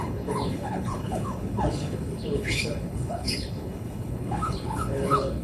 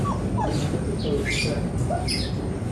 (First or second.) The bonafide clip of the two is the second